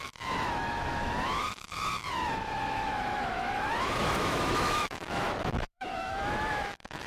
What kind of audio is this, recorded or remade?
remade